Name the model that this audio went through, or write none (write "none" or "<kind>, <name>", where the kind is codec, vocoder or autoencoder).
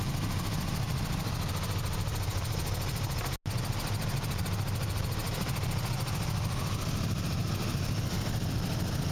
none